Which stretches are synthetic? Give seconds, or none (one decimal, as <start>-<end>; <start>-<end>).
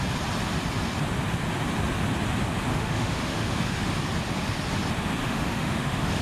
2.7-3.9; 5.2-6.2